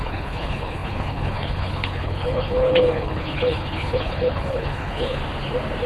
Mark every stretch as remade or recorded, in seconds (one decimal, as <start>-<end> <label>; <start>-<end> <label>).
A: 0.0-5.2 remade; 5.2-5.9 recorded